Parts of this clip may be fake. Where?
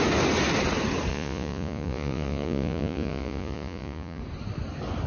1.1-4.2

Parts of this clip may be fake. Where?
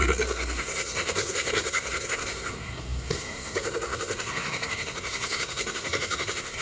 0.0-6.6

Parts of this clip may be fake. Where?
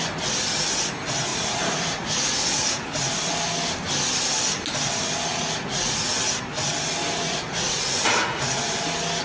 1.3-3.3; 5.3-6.1; 7.2-8.7